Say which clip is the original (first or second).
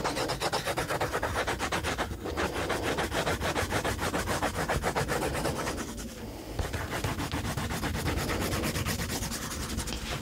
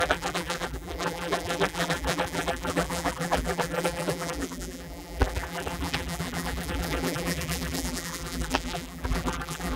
first